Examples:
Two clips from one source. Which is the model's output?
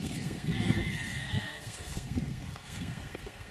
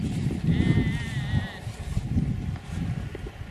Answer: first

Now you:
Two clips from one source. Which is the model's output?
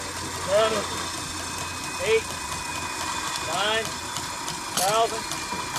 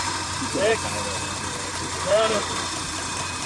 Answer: second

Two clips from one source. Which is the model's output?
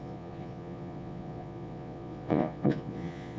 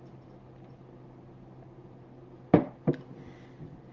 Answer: first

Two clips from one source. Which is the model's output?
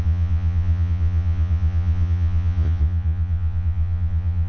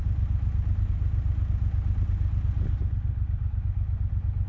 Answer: first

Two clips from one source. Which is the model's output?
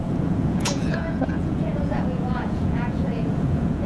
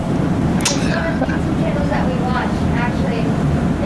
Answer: first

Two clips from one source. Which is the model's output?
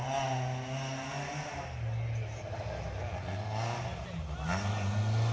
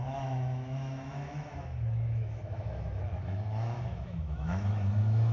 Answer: second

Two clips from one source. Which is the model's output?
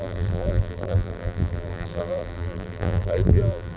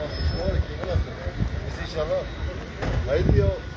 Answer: first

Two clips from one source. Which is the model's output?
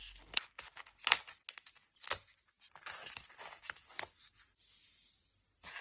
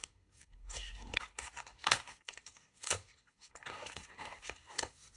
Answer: second